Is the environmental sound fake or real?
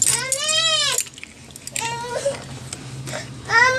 real